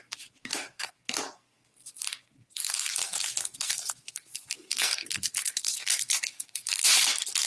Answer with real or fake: fake